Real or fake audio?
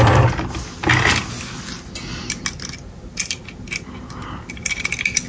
real